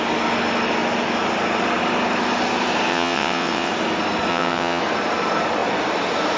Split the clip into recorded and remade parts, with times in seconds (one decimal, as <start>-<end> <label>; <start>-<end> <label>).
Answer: 0.0-2.9 recorded; 2.9-3.7 remade; 3.7-4.3 recorded; 4.3-4.8 remade; 4.8-6.4 recorded